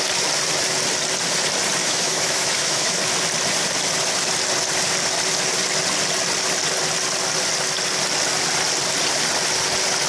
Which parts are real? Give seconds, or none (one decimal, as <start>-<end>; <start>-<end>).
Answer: 0.0-1.8; 3.0-10.1